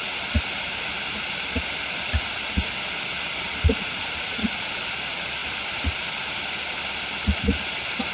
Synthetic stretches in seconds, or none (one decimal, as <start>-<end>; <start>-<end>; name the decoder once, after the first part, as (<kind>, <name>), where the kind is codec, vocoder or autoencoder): 3.8-4.4 (vocoder, Vocos)